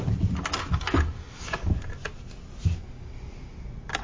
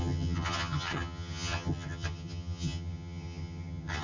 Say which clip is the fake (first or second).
second